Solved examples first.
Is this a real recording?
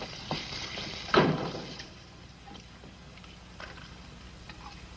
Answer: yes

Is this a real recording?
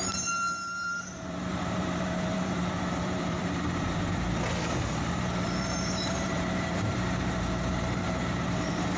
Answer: no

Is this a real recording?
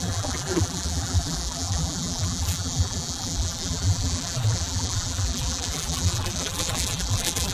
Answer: no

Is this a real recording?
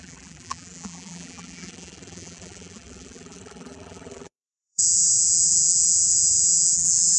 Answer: no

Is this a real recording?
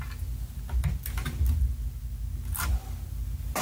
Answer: yes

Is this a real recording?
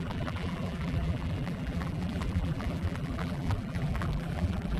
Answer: no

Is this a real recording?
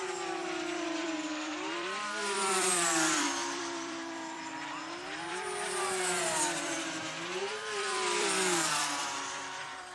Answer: no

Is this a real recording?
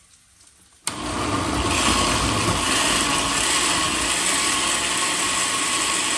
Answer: yes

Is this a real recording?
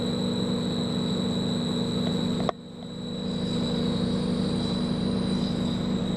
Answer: yes